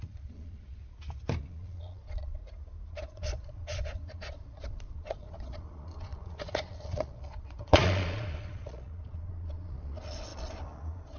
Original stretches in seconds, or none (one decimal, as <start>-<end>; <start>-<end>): 0.8-1.4; 2.4-2.9

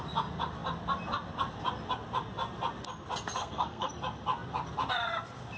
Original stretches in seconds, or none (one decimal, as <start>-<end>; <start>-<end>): 0.0-3.4; 3.9-5.6